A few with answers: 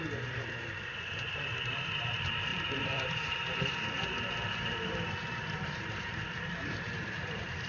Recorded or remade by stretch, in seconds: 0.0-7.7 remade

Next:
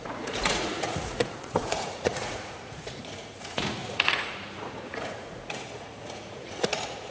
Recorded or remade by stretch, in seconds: 0.0-7.1 remade

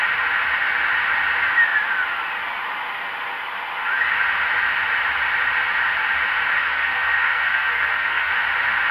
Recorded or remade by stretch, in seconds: 0.0-6.6 recorded; 6.6-8.3 remade; 8.3-8.9 recorded

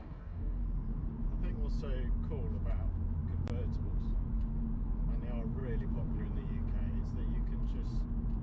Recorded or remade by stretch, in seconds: 0.0-0.6 remade; 0.6-8.4 recorded